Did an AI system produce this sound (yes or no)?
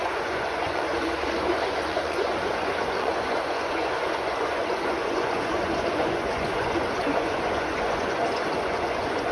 yes